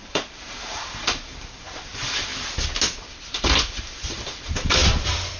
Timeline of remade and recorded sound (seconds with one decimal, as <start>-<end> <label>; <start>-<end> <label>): 0.0-2.3 remade; 2.3-3.0 recorded; 3.0-4.8 remade; 4.8-5.4 recorded